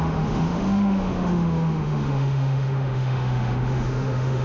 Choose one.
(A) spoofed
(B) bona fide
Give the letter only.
A